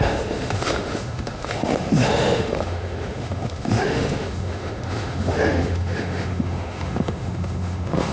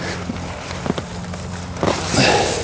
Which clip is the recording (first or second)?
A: second